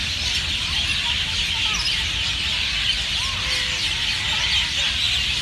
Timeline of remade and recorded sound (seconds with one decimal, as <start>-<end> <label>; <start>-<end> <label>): 0.0-5.4 recorded